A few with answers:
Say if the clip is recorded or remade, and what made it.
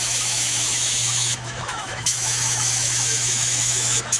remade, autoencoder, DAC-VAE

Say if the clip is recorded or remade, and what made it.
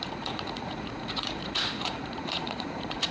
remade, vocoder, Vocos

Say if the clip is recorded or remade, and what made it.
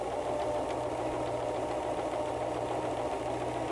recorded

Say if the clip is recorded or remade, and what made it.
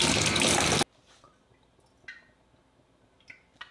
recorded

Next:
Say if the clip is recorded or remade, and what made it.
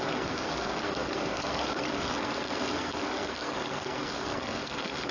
remade, codec, SNAC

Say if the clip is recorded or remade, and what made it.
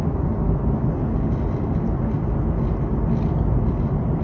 recorded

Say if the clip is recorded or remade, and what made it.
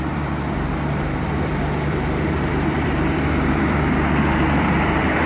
remade, vocoder, BigVGAN v2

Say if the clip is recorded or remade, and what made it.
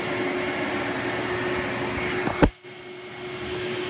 recorded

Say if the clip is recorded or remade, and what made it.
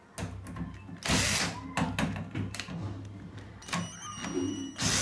recorded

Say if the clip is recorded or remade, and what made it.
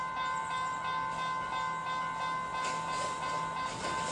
recorded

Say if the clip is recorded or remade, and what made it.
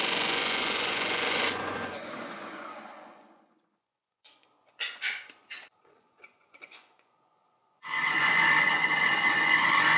remade, vocoder, Vocos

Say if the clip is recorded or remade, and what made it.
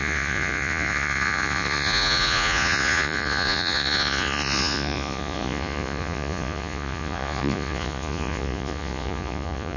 remade, vocoder, Vocos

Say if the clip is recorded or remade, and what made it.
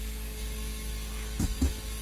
remade, codec, DAC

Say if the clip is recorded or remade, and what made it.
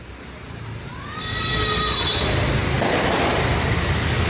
recorded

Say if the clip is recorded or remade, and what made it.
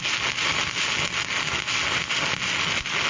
recorded